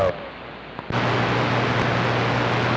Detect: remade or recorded recorded